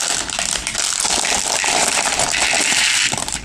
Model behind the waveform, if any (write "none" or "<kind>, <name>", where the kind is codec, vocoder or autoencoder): none